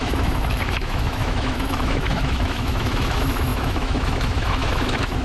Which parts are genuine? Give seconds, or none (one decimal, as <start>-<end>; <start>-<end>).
none